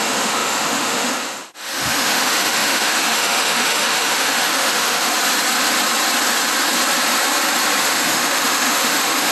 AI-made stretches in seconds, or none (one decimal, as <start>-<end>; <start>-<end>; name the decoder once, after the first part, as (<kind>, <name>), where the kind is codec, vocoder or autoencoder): 0.0-5.1 (autoencoder, DAC-VAE); 7.8-9.3